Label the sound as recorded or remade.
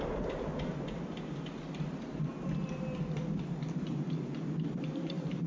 recorded